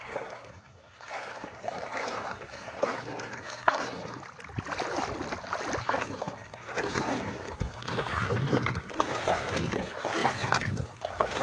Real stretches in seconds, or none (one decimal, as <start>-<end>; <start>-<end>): 4.2-5.8